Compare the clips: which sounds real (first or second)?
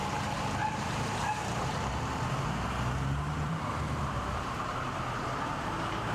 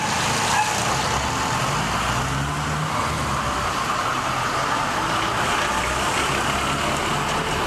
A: second